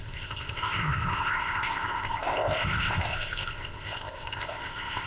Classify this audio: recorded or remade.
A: remade